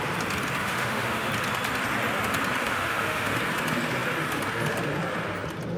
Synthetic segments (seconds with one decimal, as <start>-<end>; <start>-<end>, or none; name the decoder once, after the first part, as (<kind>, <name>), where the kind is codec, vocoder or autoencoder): 0.6-1.3 (autoencoder, DAC-VAE); 2.6-3.4